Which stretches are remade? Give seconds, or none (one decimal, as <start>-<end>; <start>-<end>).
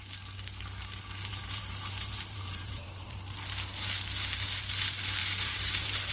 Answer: 1.3-3.2; 5.2-6.1